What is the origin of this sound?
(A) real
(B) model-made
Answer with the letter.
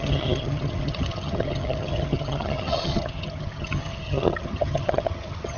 B